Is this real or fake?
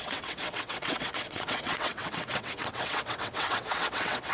fake